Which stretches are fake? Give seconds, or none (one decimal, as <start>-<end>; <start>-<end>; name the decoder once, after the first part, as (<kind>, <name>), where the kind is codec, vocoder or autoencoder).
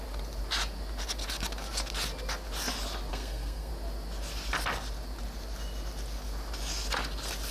3.1-3.7 (codec, SNAC)